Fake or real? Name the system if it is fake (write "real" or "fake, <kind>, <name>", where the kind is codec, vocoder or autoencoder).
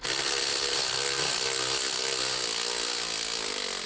real